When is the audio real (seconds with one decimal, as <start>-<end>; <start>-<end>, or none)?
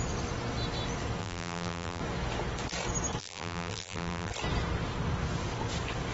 0.0-1.2; 2.0-3.2; 4.3-6.1